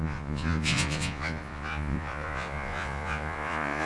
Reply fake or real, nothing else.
fake